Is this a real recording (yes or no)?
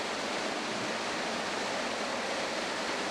yes